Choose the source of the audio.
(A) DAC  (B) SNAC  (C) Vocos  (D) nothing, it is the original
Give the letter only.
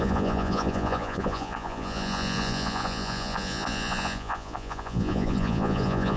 C